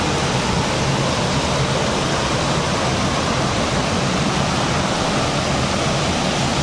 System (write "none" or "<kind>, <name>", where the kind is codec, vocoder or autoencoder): none